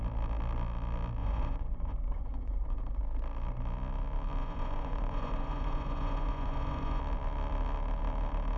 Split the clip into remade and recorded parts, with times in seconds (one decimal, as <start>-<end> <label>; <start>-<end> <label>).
0.0-1.2 recorded; 1.2-3.0 remade; 3.0-4.4 recorded; 4.4-7.0 remade; 7.0-8.6 recorded